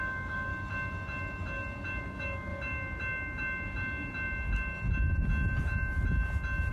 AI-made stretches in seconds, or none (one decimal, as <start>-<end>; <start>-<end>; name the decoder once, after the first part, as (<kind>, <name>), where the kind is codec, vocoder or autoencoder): 0.0-0.5 (autoencoder, DAC-VAE); 2.0-2.5